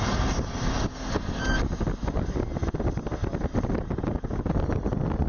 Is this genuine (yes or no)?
yes